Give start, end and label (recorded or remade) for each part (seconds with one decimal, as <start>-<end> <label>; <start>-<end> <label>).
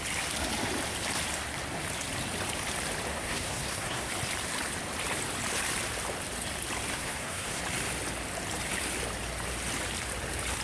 0.0-3.1 recorded; 3.1-4.1 remade; 4.1-6.9 recorded; 6.9-7.6 remade; 7.6-10.6 recorded